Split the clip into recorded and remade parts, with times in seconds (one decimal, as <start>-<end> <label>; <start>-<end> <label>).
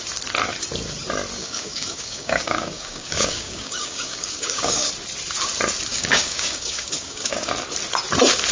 0.0-1.4 recorded; 1.4-4.9 remade; 4.9-5.9 recorded; 5.9-7.5 remade; 7.5-8.5 recorded